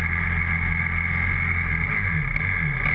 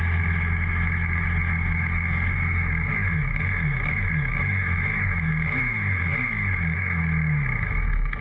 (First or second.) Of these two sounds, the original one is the first